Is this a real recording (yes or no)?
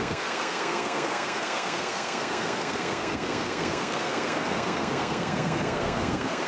no